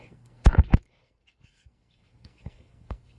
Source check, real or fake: fake